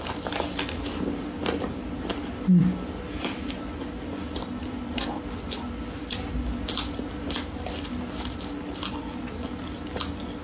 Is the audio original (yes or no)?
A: yes